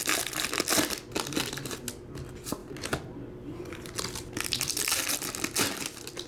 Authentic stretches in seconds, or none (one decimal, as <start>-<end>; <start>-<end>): 0.0-6.3